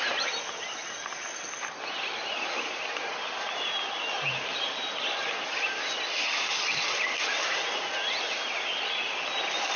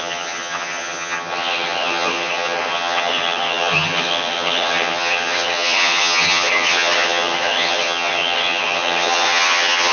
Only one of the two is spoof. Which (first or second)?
second